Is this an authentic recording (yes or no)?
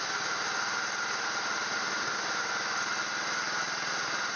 yes